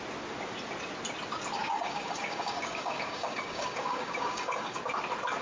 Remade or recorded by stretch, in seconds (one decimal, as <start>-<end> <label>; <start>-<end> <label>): 0.0-1.6 recorded; 1.6-4.8 remade; 4.8-5.4 recorded